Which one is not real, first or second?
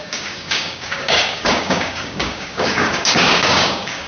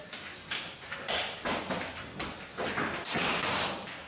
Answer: first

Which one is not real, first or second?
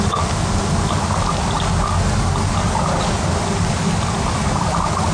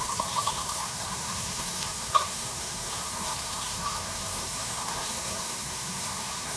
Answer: second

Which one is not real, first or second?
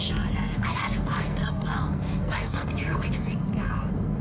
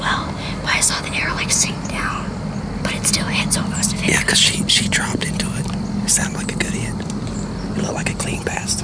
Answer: first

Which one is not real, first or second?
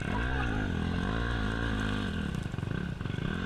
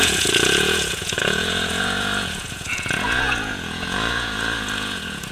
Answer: second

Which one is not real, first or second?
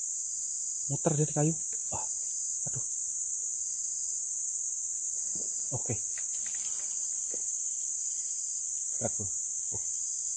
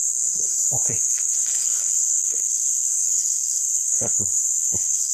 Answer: second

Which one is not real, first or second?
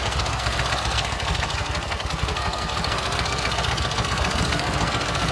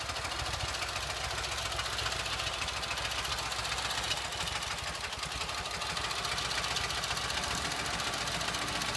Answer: first